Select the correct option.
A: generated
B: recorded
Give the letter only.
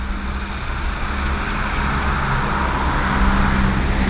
B